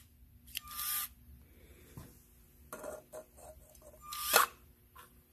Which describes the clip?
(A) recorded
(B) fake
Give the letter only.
A